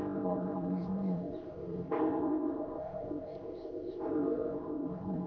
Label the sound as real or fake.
fake